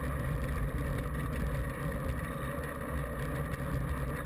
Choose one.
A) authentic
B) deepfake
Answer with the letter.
A